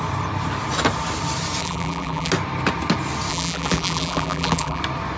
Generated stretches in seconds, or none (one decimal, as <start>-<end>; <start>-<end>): 1.6-2.3; 3.3-4.8